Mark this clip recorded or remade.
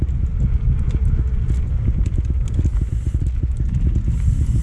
recorded